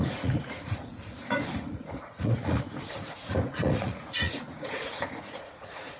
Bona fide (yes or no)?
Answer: no